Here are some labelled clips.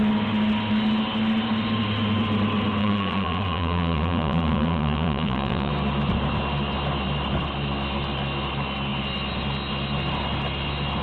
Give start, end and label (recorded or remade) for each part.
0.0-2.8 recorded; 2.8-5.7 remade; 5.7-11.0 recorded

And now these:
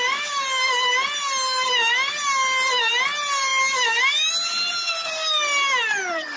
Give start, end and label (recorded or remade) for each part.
0.0-6.4 recorded

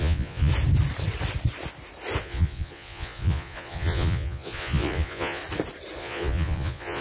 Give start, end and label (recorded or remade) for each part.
0.0-0.5 remade; 0.5-2.2 recorded; 2.2-5.4 remade; 5.4-6.0 recorded; 6.0-7.0 remade

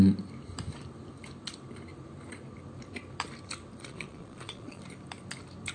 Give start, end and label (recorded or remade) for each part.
0.0-3.8 recorded; 3.8-4.8 remade; 4.8-5.7 recorded